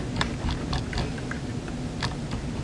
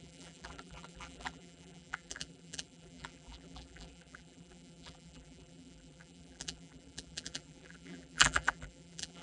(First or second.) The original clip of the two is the first